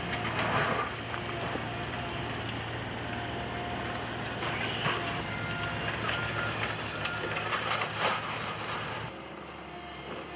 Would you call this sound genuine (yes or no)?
yes